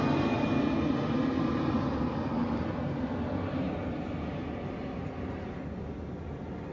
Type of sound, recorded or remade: recorded